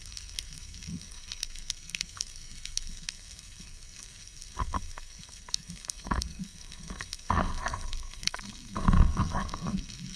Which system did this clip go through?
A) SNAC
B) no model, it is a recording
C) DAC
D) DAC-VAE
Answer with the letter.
A